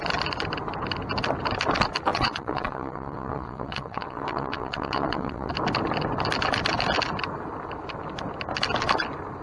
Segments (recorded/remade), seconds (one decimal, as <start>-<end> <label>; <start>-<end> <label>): 0.0-2.1 recorded; 2.1-5.5 remade; 5.5-9.4 recorded